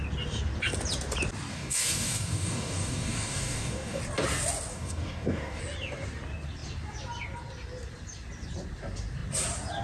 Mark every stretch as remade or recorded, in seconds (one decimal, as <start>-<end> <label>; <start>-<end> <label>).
0.0-1.5 recorded; 1.5-4.0 remade; 4.0-4.7 recorded; 4.7-5.6 remade; 5.6-9.8 recorded